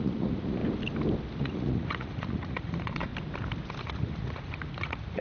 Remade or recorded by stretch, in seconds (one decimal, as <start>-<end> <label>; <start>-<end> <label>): 0.0-0.6 remade; 0.6-1.4 recorded; 1.4-3.1 remade; 3.1-3.8 recorded; 3.8-5.2 remade